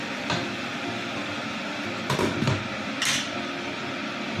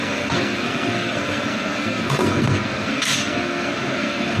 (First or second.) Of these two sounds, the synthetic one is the second